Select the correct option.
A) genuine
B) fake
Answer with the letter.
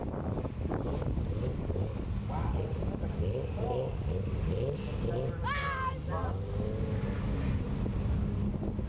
A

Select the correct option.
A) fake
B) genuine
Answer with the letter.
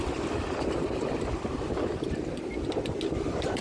A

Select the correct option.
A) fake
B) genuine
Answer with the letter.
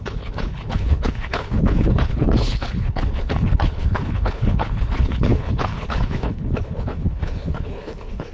A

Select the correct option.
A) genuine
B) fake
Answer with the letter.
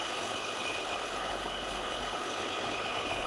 B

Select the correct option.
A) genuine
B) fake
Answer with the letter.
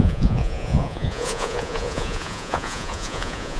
B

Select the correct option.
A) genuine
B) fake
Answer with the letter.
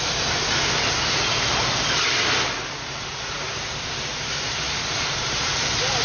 A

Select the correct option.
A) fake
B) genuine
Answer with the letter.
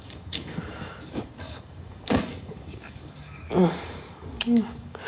A